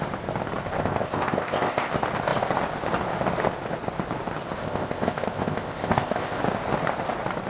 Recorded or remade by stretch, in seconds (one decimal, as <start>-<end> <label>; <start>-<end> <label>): 0.0-0.8 recorded; 0.8-1.9 remade; 1.9-4.6 recorded; 4.6-6.4 remade; 6.4-7.5 recorded